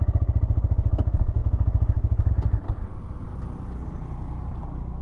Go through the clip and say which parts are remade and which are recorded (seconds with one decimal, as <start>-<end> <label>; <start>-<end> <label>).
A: 0.0-1.4 recorded; 1.4-2.3 remade; 2.3-5.0 recorded